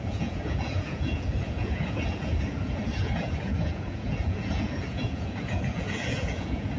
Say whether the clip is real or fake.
fake